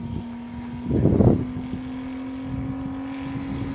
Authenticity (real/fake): real